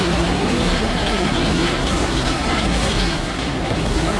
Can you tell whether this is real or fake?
fake